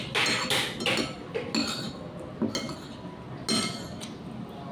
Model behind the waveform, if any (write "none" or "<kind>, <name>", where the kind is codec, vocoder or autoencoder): none